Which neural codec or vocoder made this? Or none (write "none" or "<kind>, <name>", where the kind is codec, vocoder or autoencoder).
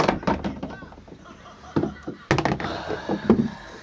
none